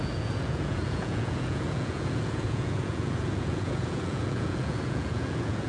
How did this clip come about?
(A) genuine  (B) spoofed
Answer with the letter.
B